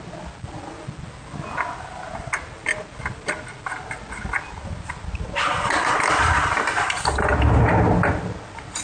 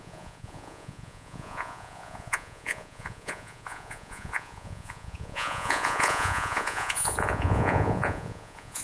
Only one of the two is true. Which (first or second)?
first